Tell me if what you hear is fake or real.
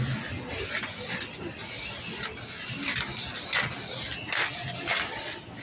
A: real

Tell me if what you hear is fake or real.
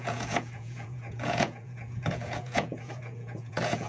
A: fake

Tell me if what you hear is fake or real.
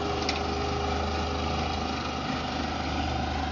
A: real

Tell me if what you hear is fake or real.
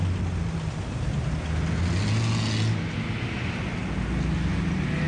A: real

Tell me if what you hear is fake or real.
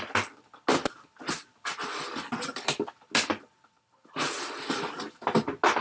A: real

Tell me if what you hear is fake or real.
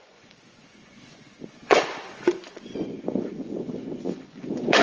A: fake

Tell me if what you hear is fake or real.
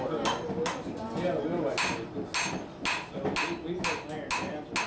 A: real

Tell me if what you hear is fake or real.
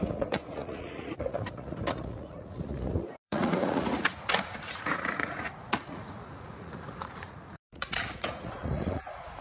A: fake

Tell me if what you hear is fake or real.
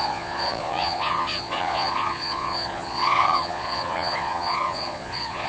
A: fake